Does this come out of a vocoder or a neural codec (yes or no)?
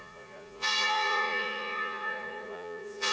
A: yes